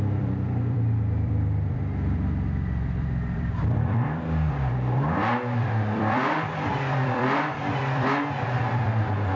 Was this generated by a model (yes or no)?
yes